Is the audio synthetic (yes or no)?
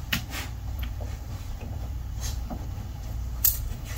yes